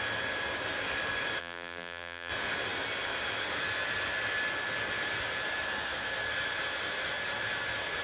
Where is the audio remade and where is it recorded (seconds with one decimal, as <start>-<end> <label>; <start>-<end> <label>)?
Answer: 0.0-1.4 recorded; 1.4-2.3 remade; 2.3-8.0 recorded